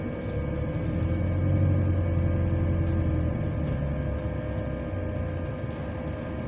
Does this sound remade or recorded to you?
recorded